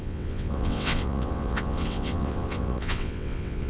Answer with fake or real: fake